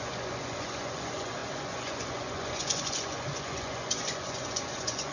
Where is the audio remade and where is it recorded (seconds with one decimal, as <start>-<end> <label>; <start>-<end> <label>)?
0.0-5.1 remade